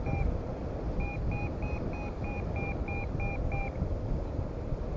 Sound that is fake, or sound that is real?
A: real